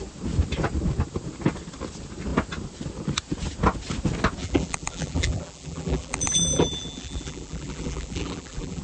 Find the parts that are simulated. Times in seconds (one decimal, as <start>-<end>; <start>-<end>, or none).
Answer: 4.4-8.8